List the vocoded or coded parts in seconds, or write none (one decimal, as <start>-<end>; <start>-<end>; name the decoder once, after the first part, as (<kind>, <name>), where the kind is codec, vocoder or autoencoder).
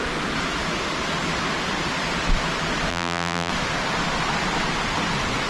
2.9-3.5 (vocoder, BigVGAN v2)